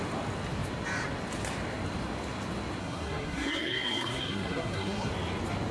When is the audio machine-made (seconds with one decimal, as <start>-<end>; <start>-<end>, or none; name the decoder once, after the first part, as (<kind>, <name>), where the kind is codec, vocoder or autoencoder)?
2.8-5.1 (codec, SNAC)